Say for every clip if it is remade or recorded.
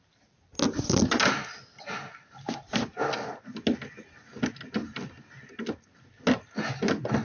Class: recorded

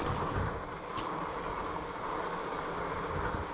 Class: recorded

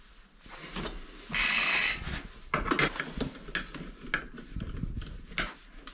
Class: recorded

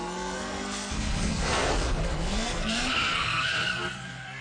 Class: remade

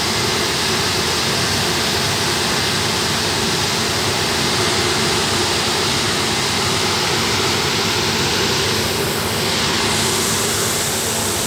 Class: recorded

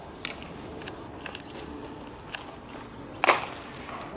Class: recorded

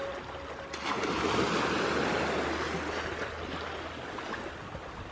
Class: recorded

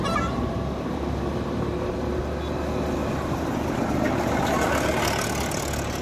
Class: recorded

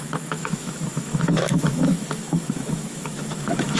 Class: remade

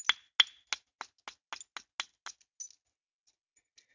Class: recorded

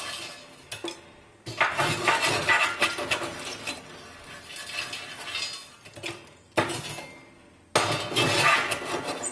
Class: recorded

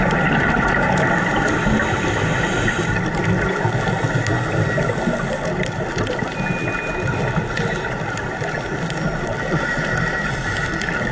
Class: recorded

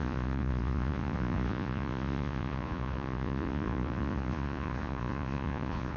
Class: remade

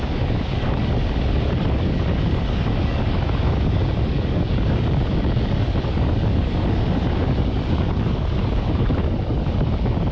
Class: remade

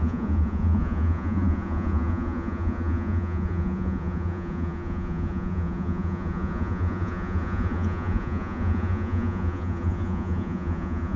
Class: remade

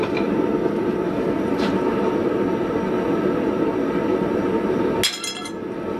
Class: recorded